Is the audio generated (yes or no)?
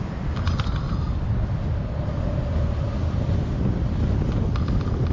no